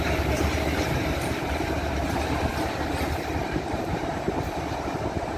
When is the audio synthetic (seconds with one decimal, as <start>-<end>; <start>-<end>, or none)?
0.0-2.5; 3.4-5.4